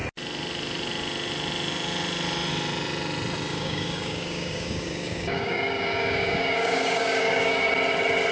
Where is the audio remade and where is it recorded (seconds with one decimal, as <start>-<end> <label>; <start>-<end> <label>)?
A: 0.0-3.5 recorded; 3.5-7.7 remade; 7.7-8.3 recorded